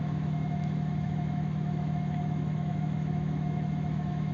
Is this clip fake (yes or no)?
yes